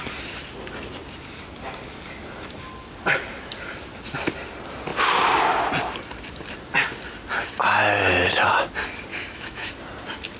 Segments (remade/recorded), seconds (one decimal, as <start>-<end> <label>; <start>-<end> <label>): 0.0-9.1 recorded; 9.1-9.7 remade; 9.7-10.4 recorded